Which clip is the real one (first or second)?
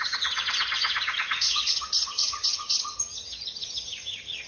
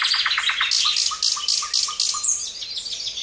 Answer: second